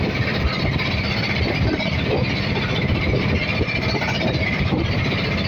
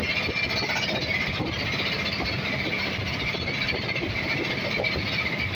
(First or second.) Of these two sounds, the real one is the second